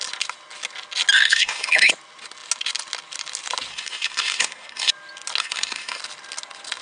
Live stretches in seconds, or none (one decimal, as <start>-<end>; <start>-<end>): 0.0-1.1; 1.9-3.7; 4.9-5.4; 6.0-6.8

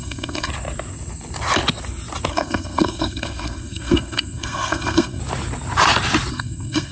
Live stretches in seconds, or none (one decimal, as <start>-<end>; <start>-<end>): 0.5-2.3; 5.2-6.3